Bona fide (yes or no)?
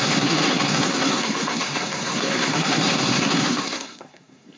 no